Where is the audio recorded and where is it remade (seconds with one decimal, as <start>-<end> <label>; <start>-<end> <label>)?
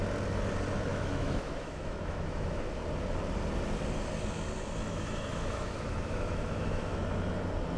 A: 0.0-0.9 recorded; 0.9-2.6 remade; 2.6-4.9 recorded; 4.9-7.0 remade; 7.0-7.8 recorded